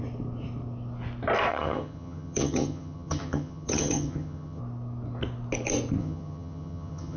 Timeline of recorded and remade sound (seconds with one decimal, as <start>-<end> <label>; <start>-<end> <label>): 0.0-1.5 recorded; 1.5-4.6 remade; 4.6-6.0 recorded; 6.0-7.2 remade